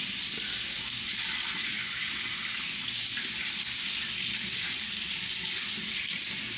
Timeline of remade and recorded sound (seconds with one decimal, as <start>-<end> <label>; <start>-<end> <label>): 0.0-6.6 remade

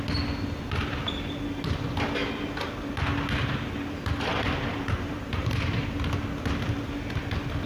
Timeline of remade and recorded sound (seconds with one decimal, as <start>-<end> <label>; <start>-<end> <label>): 0.0-4.7 recorded; 4.7-5.6 remade; 5.6-7.7 recorded

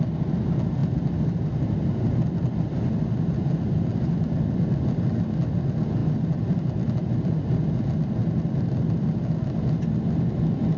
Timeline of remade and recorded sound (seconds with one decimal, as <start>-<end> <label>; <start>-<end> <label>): 0.0-6.0 recorded; 6.0-7.4 remade; 7.4-10.8 recorded

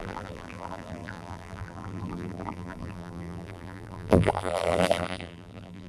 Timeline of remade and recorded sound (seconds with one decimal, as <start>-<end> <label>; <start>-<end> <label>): 0.0-5.9 remade

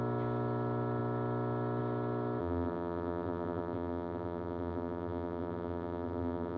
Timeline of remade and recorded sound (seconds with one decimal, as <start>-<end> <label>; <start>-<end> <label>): 0.0-2.4 recorded; 2.4-6.6 remade

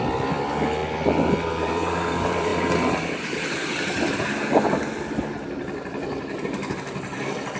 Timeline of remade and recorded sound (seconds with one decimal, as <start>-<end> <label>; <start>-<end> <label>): 0.0-2.5 remade; 2.5-6.4 recorded; 6.4-7.6 remade